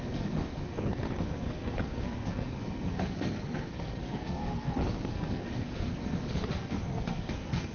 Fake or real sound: fake